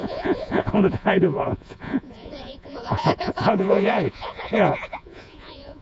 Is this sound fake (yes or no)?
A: yes